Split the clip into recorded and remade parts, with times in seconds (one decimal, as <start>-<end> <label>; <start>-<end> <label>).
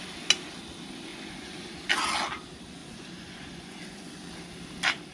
0.0-1.1 recorded; 1.1-1.7 remade; 1.7-2.8 recorded; 2.8-4.2 remade; 4.2-5.1 recorded